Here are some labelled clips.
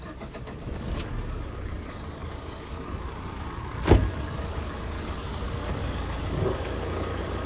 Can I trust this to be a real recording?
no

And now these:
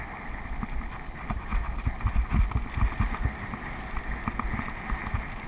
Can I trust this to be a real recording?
yes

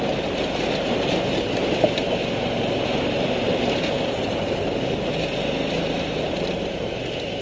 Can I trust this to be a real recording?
no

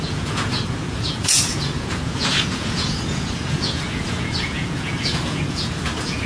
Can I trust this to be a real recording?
no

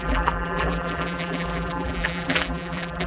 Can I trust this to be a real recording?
no